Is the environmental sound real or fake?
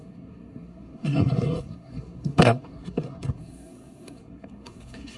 fake